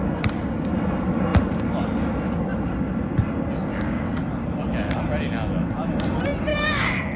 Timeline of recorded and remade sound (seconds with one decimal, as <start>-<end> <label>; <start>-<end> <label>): 0.0-3.7 recorded; 3.7-4.2 remade; 4.2-6.5 recorded; 6.5-7.2 remade